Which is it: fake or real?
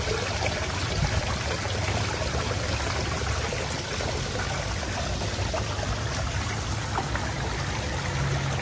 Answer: real